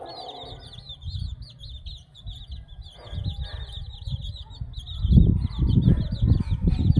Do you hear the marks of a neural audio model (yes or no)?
no